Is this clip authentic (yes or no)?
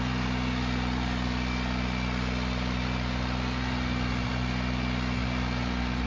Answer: yes